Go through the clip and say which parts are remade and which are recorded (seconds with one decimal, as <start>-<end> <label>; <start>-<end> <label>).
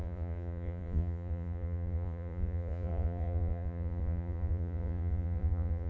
0.0-5.9 remade